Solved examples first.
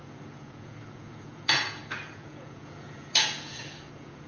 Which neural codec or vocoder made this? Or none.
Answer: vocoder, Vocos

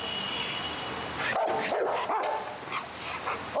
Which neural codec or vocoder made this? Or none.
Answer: none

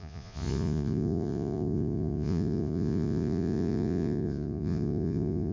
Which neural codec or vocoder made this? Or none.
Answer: vocoder, Vocos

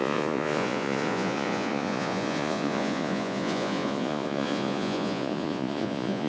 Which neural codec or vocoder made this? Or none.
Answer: vocoder, Vocos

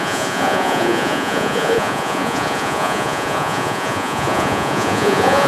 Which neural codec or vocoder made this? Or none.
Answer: vocoder, Vocos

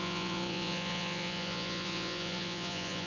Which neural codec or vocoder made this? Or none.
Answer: vocoder, Vocos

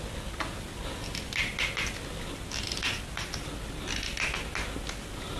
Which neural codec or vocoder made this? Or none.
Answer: none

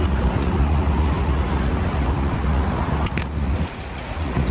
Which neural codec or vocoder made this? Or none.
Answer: vocoder, Vocos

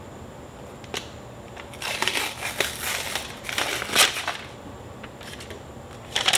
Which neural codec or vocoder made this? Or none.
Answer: none